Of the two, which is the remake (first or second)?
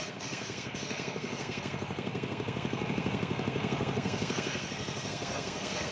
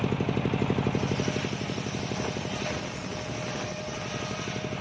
first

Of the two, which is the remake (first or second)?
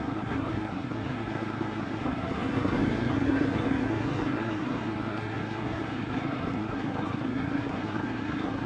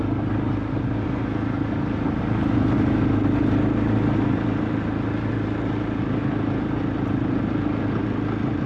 first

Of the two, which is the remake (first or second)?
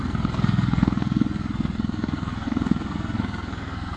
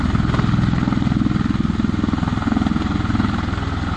first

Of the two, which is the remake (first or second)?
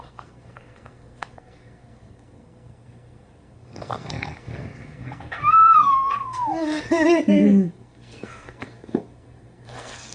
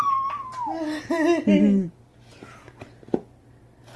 first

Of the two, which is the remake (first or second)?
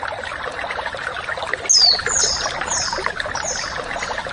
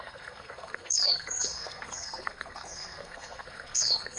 second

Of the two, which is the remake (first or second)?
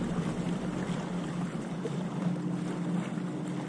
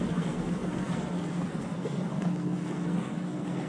second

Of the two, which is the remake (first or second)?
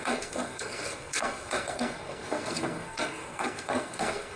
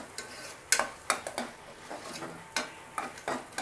first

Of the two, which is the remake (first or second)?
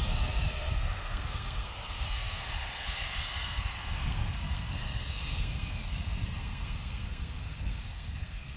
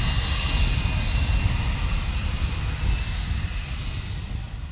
first